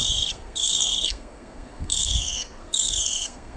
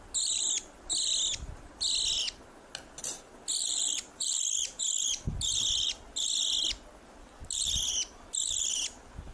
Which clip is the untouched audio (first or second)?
second